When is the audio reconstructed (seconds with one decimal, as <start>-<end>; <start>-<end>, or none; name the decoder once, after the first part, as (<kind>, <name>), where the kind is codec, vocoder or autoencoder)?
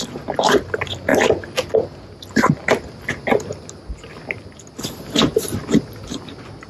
none